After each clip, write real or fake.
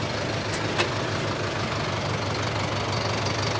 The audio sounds real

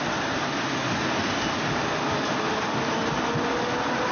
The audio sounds real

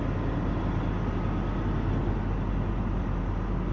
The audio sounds real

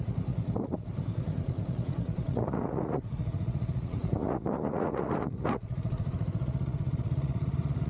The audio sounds fake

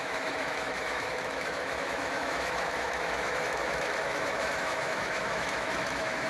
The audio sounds fake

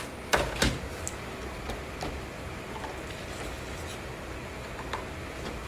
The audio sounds real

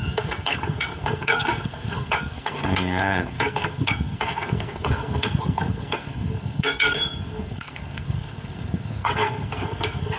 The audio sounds fake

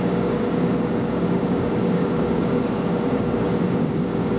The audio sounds fake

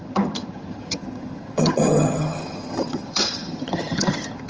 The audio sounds fake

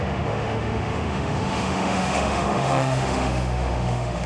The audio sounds fake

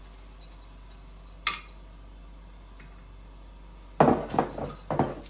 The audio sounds real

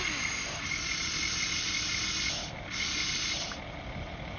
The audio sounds real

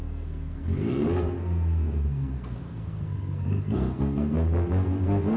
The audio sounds fake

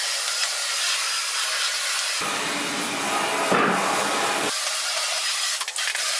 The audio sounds real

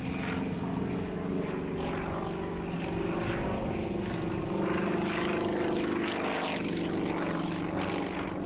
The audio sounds real